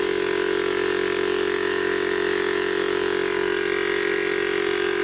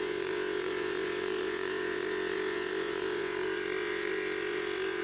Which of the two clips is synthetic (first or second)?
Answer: second